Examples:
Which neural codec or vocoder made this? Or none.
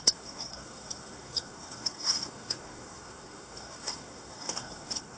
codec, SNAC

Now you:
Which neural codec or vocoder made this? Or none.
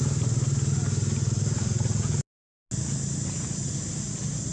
none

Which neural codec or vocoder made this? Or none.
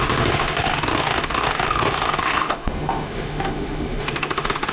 autoencoder, DAC-VAE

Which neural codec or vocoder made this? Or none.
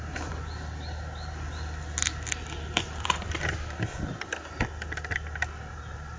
none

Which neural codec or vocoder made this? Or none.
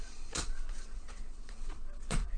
vocoder, Vocos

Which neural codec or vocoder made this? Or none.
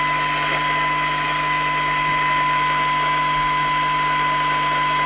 none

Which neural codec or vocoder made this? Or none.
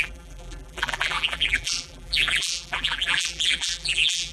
vocoder, BigVGAN v2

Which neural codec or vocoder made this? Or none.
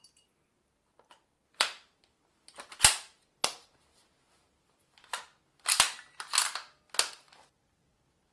none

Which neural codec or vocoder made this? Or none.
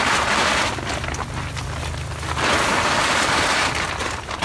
none